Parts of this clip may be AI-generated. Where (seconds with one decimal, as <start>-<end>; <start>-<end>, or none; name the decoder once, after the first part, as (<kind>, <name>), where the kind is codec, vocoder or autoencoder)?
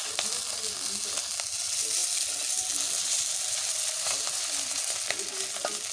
none